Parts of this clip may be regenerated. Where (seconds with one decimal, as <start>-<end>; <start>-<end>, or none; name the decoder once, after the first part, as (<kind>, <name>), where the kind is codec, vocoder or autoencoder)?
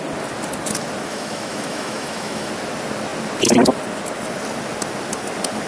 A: 1.1-2.5 (autoencoder, DAC-VAE)